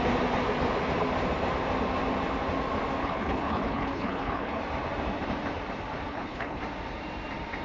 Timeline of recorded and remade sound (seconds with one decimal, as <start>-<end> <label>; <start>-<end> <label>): 0.0-3.0 recorded; 3.0-4.6 remade; 4.6-6.1 recorded; 6.1-6.6 remade; 6.6-7.6 recorded